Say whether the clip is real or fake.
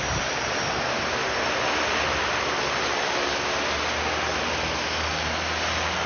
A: real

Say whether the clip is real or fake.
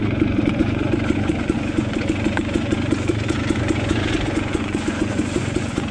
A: fake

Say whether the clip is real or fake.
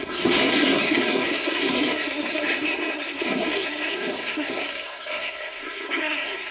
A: fake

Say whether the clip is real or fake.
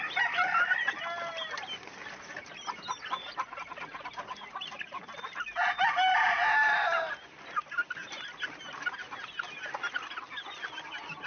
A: real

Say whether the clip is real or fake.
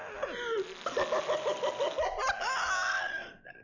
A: real